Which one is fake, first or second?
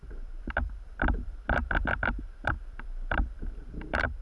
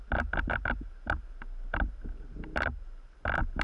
first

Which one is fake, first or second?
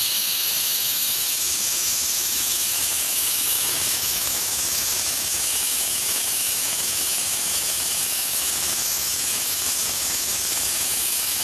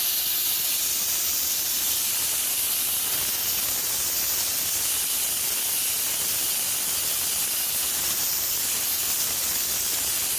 first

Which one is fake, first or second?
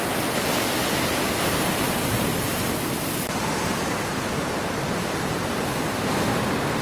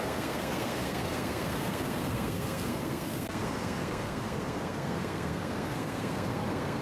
second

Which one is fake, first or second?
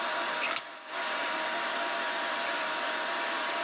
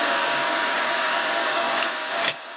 second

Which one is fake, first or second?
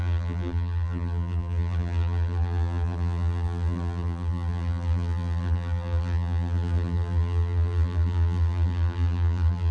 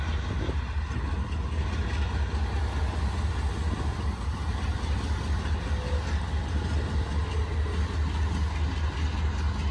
first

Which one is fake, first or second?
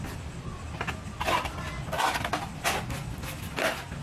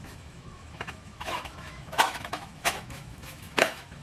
second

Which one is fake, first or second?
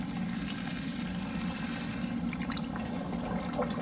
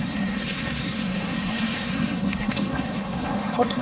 second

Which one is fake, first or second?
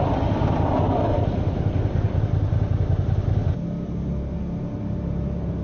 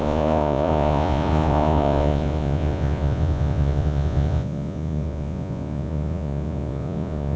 second